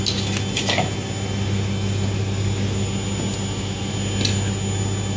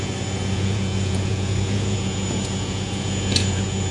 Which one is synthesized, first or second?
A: second